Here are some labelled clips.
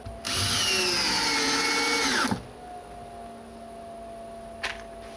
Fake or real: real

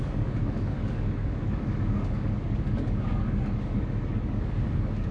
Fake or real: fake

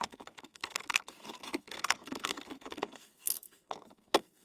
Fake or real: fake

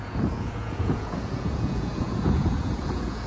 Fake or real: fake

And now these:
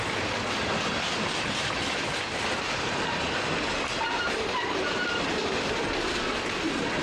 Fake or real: real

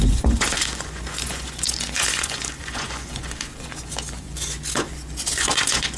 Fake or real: fake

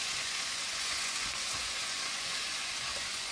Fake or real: fake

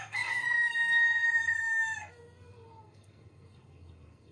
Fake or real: fake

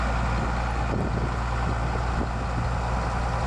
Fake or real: real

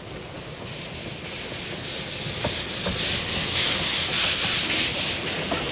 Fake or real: real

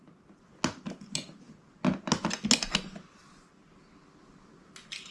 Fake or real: real